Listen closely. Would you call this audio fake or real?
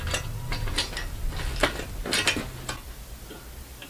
real